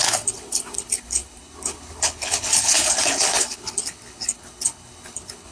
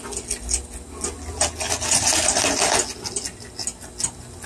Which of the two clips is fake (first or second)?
first